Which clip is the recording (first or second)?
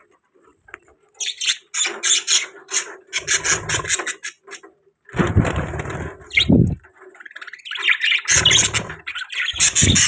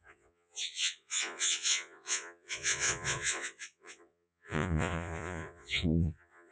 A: first